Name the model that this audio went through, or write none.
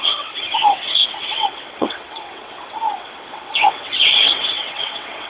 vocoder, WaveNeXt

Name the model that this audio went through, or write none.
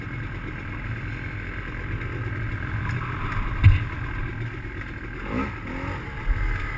none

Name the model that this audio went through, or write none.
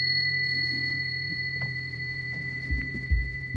vocoder, Vocos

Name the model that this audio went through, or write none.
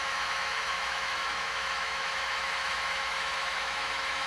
autoencoder, DAC-VAE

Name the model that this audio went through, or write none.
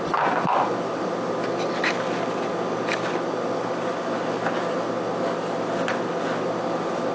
none